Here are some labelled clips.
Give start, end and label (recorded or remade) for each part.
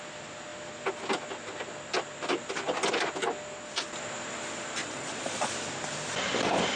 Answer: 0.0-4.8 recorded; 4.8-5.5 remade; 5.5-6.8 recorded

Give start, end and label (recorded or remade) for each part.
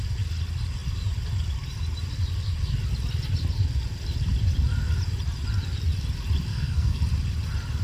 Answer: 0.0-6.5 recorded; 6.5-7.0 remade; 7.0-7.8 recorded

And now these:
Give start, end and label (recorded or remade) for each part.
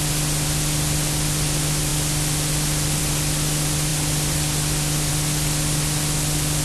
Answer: 0.0-6.6 recorded